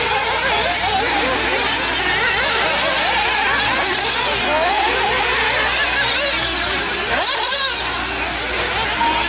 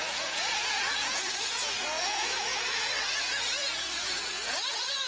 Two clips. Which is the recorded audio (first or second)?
first